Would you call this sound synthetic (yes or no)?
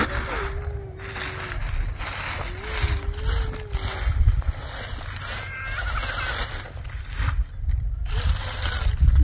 no